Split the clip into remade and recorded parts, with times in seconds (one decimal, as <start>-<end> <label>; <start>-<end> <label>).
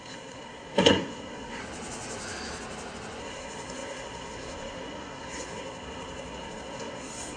0.0-1.6 remade; 1.6-3.2 recorded; 3.2-7.4 remade